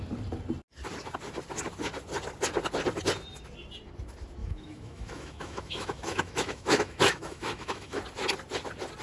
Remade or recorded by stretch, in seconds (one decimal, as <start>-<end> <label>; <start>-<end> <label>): 0.0-4.4 recorded; 4.4-8.0 remade; 8.0-9.0 recorded